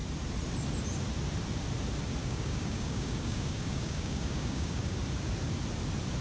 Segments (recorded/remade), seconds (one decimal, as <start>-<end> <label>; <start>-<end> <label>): 0.0-2.2 recorded; 2.2-5.0 remade; 5.0-6.2 recorded